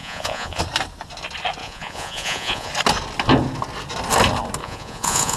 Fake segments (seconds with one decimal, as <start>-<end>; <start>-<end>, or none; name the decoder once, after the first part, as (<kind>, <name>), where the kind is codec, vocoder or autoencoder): 0.0-0.6 (vocoder, Vocos); 1.6-2.7; 4.6-5.4